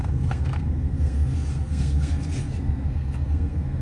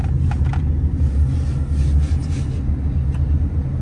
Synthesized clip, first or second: first